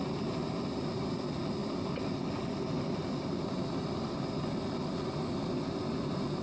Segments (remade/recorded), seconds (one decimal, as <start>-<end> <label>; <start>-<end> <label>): 0.0-6.4 recorded